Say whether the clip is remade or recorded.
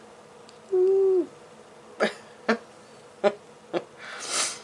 recorded